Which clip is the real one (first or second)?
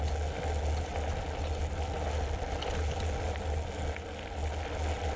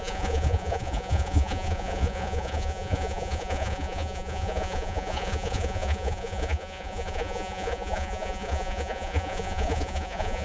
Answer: first